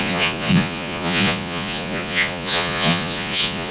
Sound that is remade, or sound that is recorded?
remade